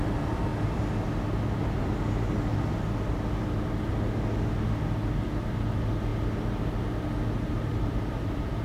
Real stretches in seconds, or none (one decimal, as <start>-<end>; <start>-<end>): 0.5-5.5; 6.1-7.3